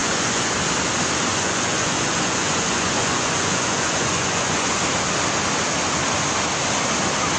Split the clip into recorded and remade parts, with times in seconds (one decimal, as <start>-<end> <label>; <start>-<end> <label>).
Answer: 0.0-0.5 remade; 0.5-1.3 recorded; 1.3-4.8 remade; 4.8-7.4 recorded